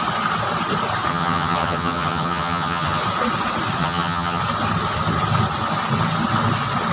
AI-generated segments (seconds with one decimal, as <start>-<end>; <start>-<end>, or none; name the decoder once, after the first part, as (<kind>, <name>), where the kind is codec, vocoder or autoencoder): 1.1-3.0 (vocoder, HiFi-GAN); 3.8-4.4